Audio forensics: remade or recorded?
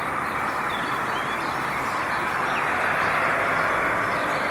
remade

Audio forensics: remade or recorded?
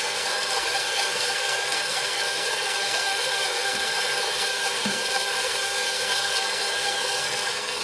remade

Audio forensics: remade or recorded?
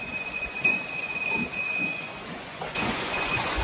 remade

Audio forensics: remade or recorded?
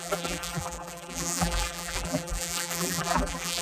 remade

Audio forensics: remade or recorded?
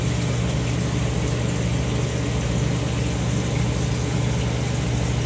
recorded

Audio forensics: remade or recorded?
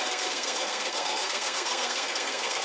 remade